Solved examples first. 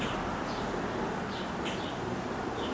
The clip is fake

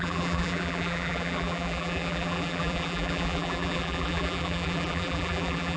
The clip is fake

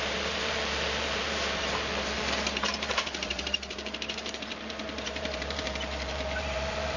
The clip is fake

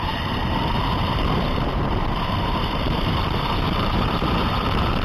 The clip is fake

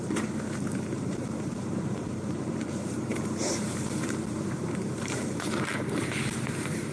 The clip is fake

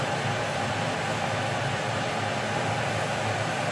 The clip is real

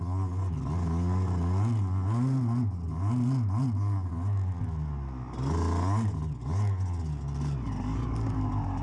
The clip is real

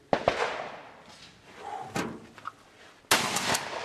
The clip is real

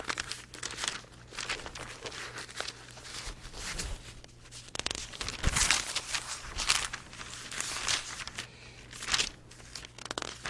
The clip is real